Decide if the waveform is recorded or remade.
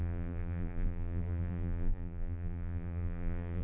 remade